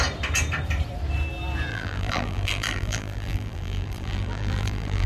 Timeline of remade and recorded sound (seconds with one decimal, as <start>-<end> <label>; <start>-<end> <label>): 0.0-1.7 recorded; 1.7-5.1 remade